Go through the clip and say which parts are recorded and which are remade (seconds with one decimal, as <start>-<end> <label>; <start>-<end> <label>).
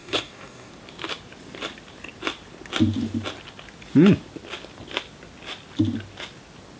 0.0-0.7 remade; 0.7-6.8 recorded